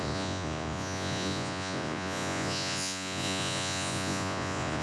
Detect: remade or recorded remade